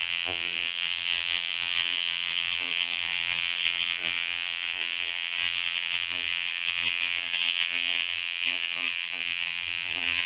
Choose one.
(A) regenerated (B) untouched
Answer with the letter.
A